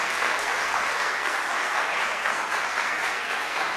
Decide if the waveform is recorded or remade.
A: remade